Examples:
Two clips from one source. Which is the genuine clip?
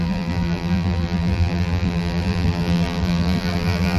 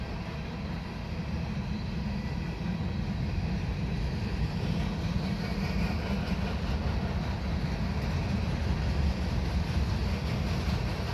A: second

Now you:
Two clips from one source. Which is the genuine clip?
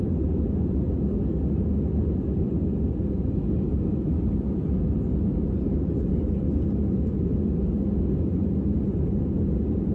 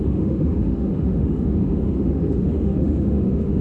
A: first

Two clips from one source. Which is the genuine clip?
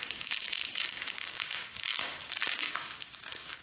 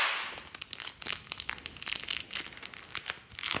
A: second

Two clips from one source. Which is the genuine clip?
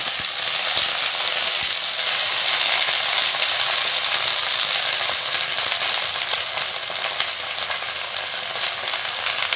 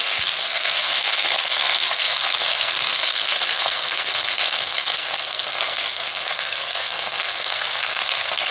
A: first